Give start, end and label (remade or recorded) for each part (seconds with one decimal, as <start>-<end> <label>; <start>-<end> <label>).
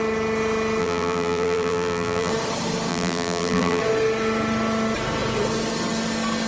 0.0-0.8 recorded; 0.8-2.3 remade; 2.3-2.9 recorded; 2.9-3.8 remade; 3.8-6.5 recorded